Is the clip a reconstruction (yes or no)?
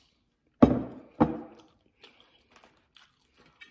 no